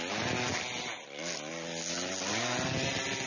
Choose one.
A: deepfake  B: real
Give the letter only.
B